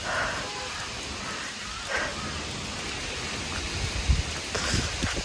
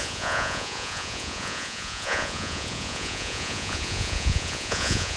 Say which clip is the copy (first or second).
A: second